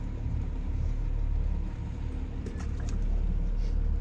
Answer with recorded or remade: recorded